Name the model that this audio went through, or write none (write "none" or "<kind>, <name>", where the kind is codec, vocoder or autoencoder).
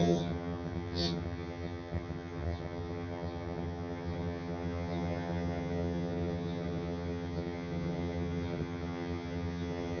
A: vocoder, HiFi-GAN